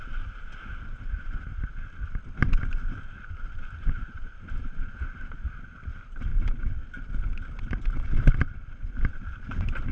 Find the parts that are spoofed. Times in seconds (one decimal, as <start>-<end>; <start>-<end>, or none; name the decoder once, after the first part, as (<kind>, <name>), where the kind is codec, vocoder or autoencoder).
0.0-1.5 (vocoder, BigVGAN v2); 3.8-6.3; 8.9-9.9